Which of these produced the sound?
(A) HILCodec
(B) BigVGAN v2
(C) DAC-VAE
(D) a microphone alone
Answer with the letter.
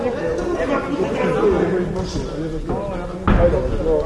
D